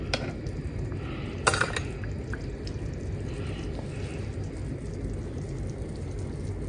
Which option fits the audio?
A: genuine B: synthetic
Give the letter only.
A